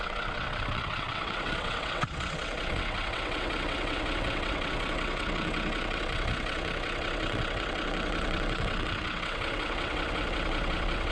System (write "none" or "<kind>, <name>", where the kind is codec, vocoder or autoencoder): vocoder, WaveNeXt